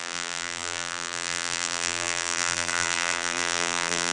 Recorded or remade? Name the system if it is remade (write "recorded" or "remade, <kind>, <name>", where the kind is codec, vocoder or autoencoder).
remade, vocoder, BigVGAN v2